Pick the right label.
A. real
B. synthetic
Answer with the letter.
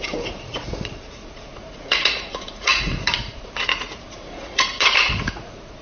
B